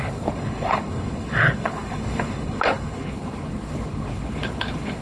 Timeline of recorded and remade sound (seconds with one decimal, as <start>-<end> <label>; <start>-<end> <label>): 0.0-5.0 remade